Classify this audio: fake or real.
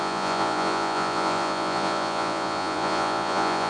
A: fake